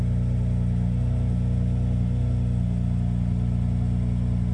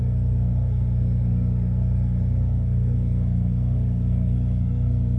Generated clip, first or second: second